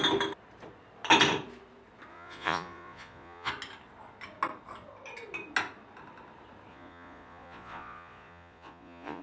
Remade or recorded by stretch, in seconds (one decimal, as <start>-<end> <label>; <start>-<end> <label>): 0.0-2.1 recorded; 2.1-3.5 remade; 3.5-6.7 recorded; 6.7-9.2 remade